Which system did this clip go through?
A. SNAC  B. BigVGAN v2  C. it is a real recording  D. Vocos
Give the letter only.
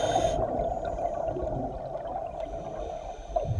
C